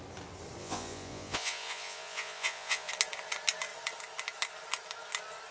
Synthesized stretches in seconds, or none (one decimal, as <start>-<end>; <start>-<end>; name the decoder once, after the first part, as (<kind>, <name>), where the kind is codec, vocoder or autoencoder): 0.6-2.9 (vocoder, Vocos)